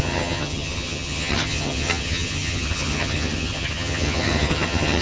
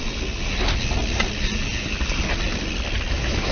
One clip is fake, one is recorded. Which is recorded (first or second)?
second